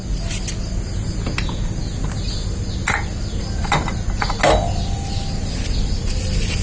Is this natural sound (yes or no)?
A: yes